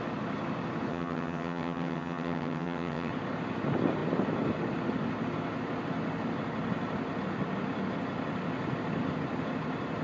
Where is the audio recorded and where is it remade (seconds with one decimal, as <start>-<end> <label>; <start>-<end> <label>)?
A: 0.0-0.9 recorded; 0.9-3.1 remade; 3.1-10.0 recorded